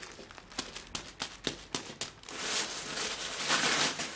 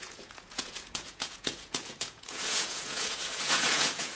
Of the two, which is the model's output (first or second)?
second